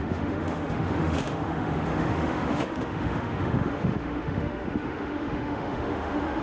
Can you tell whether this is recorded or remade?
remade